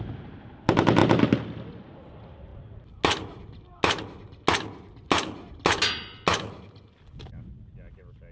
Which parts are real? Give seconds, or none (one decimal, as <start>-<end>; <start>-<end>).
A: 0.0-8.3